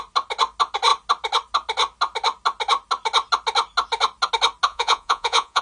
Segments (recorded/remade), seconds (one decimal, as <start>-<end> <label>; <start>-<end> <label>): 0.0-4.7 recorded; 4.7-5.6 remade